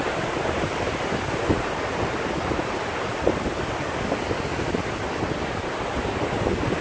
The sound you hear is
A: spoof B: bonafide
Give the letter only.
B